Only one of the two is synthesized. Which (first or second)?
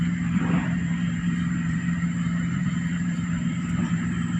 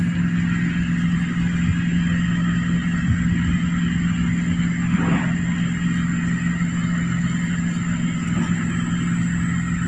first